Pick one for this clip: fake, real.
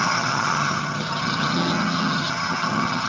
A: fake